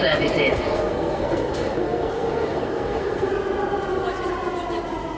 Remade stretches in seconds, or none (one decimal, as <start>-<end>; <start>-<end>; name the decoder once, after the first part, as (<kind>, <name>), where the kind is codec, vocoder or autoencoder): 0.5-3.3 (codec, SNAC)